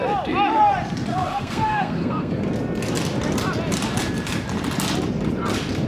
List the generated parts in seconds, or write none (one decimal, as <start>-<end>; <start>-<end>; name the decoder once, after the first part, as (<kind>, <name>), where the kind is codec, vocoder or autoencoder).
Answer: 1.1-2.3 (codec, SNAC)